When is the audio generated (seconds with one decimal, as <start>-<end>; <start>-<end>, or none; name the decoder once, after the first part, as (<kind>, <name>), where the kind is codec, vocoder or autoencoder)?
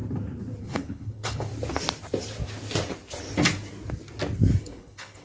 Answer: 0.6-1.5 (codec, HILCodec); 4.6-5.2